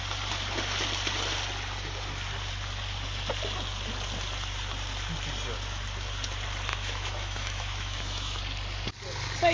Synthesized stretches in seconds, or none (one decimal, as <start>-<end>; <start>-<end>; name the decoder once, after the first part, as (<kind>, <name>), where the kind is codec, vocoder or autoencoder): 6.7-8.4 (autoencoder, DAC-VAE)